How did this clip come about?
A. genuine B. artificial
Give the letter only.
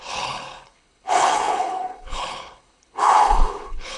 B